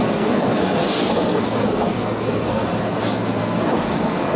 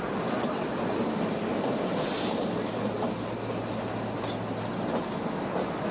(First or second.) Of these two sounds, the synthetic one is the first